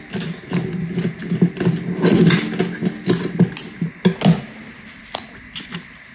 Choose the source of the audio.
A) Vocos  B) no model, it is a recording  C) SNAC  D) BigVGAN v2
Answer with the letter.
B